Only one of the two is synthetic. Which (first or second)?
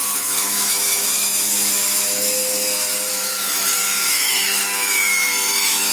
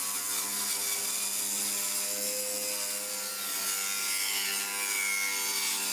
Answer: first